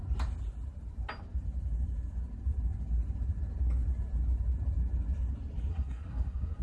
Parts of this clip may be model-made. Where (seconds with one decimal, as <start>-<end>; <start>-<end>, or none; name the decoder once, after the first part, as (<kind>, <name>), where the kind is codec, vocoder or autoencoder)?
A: 5.7-6.6 (codec, SNAC)